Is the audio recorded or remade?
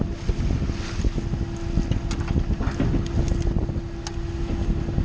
recorded